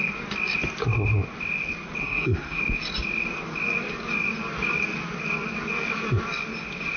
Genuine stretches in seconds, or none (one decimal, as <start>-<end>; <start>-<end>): 0.0-2.0; 2.6-7.0